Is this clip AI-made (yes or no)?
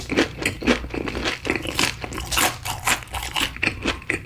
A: no